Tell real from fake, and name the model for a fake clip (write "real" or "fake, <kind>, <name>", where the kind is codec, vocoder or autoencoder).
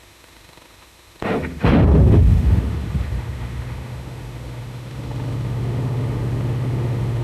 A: fake, autoencoder, DAC-VAE